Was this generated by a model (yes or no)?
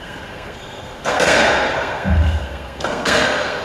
yes